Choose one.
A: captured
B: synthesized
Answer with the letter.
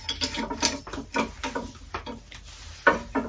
A